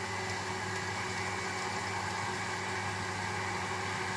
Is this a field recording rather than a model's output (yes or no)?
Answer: yes